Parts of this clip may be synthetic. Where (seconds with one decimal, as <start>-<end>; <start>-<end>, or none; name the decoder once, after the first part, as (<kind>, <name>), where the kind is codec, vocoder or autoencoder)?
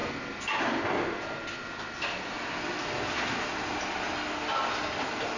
none